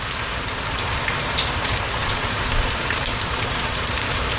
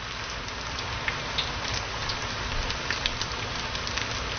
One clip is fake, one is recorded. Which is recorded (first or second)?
second